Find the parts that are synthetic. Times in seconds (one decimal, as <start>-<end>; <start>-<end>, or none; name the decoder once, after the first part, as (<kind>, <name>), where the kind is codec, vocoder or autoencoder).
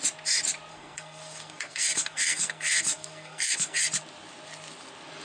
0.7-3.8 (codec, SNAC)